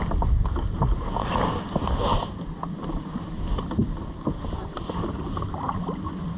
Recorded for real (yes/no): yes